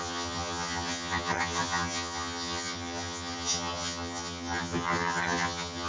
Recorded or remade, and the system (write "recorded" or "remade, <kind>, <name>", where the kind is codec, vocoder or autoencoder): remade, vocoder, HiFi-GAN